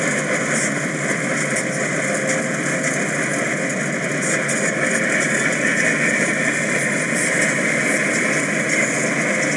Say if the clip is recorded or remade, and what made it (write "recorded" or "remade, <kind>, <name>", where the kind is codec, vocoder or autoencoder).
recorded